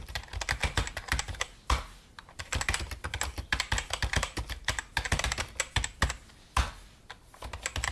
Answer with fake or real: real